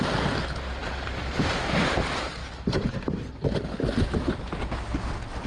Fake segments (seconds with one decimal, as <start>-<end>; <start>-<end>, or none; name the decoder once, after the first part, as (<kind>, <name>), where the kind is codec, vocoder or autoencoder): 0.8-1.6 (vocoder, BigVGAN v2); 2.4-3.3